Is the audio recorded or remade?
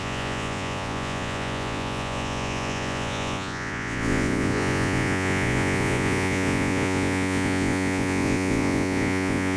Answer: remade